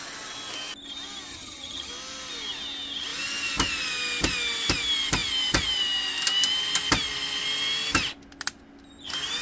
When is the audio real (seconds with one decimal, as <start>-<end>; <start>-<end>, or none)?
0.0-1.3; 1.9-9.4